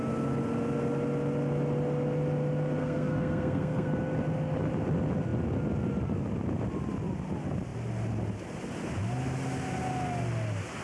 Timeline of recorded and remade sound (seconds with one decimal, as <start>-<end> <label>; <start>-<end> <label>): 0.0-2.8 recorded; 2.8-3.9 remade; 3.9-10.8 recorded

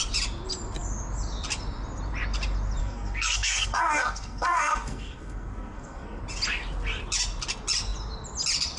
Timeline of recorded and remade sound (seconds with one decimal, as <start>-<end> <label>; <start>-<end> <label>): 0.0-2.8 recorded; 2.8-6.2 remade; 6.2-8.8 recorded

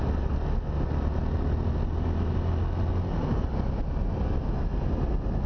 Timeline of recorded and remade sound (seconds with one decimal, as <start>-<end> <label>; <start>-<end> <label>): 0.0-5.5 recorded

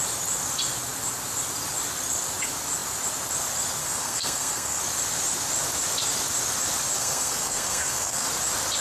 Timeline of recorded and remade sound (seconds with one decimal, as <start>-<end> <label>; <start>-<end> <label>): 0.0-3.8 recorded; 3.8-4.8 remade; 4.8-7.0 recorded; 7.0-8.3 remade; 8.3-8.8 recorded

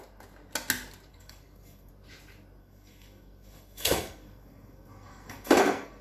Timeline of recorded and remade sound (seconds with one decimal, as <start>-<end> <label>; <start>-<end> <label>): 0.0-1.1 recorded; 1.1-1.9 remade; 1.9-2.6 recorded; 2.6-6.0 remade

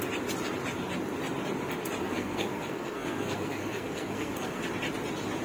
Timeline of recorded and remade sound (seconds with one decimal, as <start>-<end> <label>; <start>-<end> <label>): 0.0-2.0 recorded; 2.0-4.6 remade; 4.6-5.4 recorded